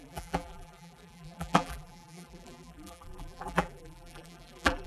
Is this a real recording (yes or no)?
no